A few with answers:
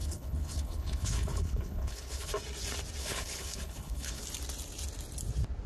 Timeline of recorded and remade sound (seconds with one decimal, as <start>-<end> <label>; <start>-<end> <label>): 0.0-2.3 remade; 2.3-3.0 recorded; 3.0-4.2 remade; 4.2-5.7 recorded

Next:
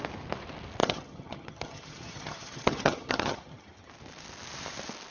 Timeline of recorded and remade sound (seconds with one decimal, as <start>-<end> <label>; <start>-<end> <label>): 0.0-0.8 recorded; 0.8-3.9 remade; 3.9-5.1 recorded

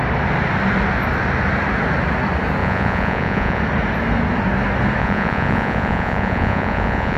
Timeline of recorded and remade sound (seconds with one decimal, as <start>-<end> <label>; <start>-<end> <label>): 0.0-2.6 recorded; 2.6-3.6 remade; 3.6-5.0 recorded; 5.0-7.2 remade

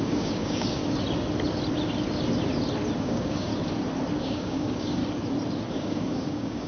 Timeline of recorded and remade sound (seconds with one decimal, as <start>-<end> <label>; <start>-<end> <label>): 0.0-0.8 remade; 0.8-3.0 recorded; 3.0-3.5 remade; 3.5-4.2 recorded; 4.2-5.0 remade; 5.0-5.7 recorded; 5.7-6.7 remade